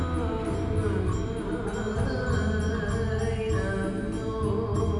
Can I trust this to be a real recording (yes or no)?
yes